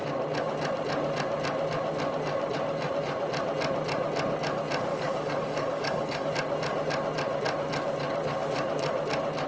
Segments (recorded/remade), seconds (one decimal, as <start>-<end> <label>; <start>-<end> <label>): 0.0-4.9 recorded; 4.9-6.3 remade; 6.3-9.5 recorded